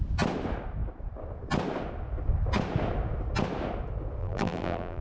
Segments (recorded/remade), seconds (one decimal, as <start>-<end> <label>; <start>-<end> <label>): 0.0-4.2 recorded; 4.2-5.0 remade

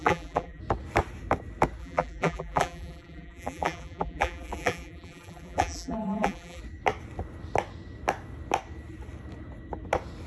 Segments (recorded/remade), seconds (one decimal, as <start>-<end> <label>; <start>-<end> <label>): 0.0-0.6 remade; 0.6-1.8 recorded; 1.8-6.6 remade; 6.6-10.3 recorded

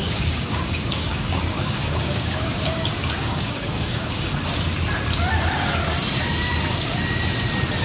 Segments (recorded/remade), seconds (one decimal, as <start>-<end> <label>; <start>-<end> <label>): 0.0-4.3 remade; 4.3-7.8 recorded

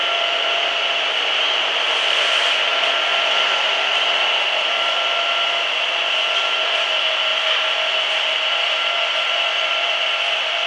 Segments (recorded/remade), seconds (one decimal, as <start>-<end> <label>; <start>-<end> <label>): 0.0-7.3 recorded; 7.3-10.7 remade

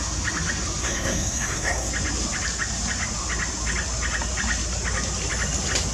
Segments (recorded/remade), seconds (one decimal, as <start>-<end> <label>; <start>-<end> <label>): 0.0-0.8 recorded; 0.8-1.9 remade; 1.9-5.9 recorded

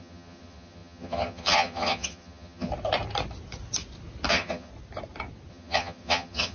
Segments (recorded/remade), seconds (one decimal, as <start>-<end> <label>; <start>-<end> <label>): 0.0-2.7 remade; 2.7-4.3 recorded; 4.3-4.7 remade; 4.7-5.5 recorded; 5.5-6.5 remade